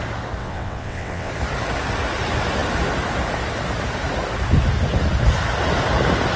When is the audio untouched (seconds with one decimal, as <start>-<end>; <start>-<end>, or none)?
0.0-0.4; 1.3-6.4